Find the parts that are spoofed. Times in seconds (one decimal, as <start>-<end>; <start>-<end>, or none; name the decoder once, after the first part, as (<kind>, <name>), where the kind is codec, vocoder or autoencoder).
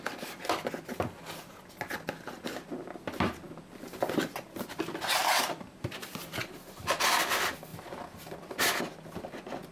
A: 5.2-6.4 (vocoder, BigVGAN v2)